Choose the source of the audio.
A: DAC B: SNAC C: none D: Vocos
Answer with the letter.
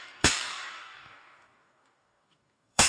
A